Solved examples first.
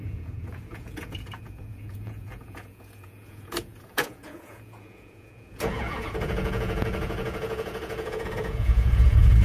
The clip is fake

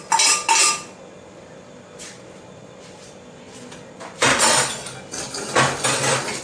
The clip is real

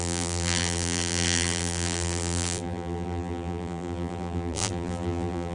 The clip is fake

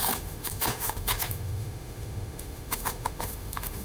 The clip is fake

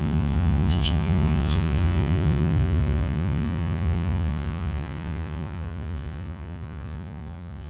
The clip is fake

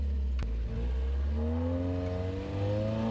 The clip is real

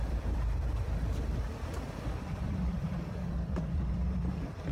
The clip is fake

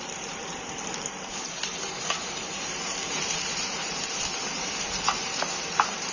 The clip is fake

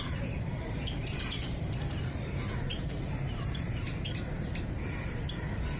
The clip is fake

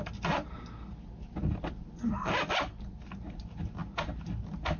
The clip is real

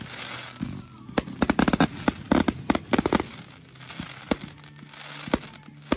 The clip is real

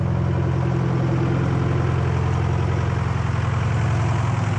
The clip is real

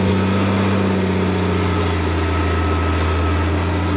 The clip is real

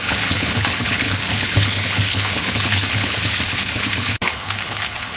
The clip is fake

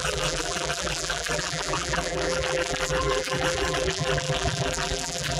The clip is fake